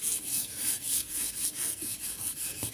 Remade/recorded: remade